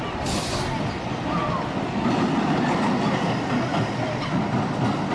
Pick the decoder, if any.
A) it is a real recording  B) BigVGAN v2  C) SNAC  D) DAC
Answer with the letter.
A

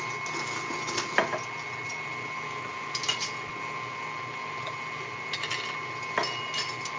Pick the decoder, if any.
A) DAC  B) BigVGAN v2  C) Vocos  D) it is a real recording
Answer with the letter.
D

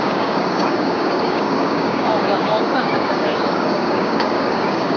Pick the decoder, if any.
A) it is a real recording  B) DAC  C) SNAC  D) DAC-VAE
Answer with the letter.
B